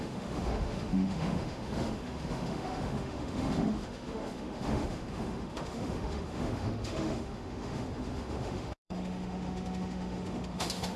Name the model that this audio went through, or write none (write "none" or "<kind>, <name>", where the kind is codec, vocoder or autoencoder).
autoencoder, DAC-VAE